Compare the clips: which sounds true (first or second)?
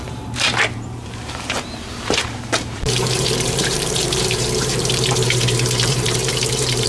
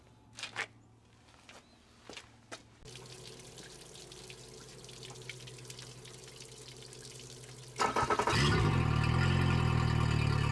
second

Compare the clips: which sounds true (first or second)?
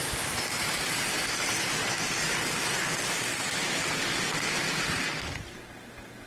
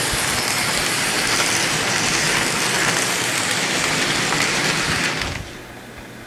second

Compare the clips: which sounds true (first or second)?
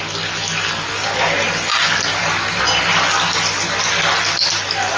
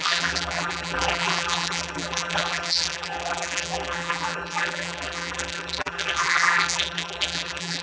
first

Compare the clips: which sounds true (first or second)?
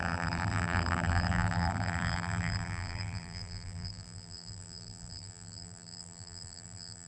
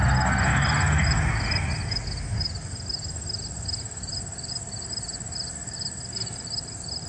second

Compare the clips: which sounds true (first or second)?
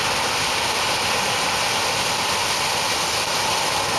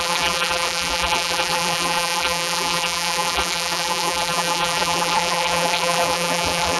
first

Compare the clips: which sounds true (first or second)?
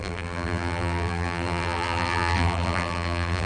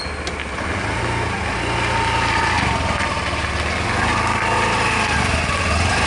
second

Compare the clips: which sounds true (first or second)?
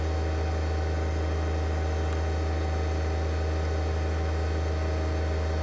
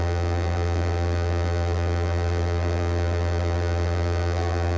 first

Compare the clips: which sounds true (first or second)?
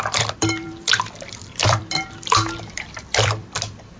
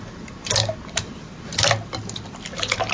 second